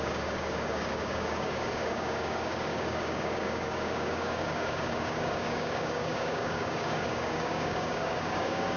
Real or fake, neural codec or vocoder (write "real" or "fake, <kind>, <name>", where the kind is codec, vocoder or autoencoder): fake, codec, DAC